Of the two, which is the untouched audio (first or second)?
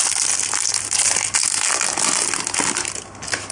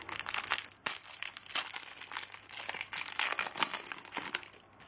first